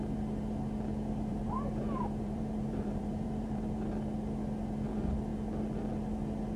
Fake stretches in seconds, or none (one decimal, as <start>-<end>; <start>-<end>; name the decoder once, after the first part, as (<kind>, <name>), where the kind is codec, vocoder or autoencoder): 1.3-3.9 (vocoder, BigVGAN v2)